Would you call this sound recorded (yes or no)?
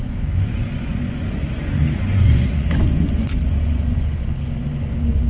no